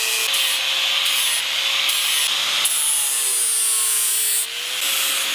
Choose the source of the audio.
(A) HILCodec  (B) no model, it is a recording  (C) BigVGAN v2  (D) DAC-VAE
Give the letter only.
B